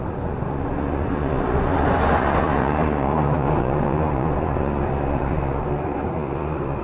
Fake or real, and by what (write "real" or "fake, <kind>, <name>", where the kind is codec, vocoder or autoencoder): fake, vocoder, Vocos